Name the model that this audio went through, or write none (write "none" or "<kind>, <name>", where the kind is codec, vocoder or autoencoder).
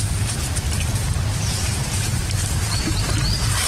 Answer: vocoder, BigVGAN v2